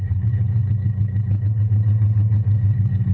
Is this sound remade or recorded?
remade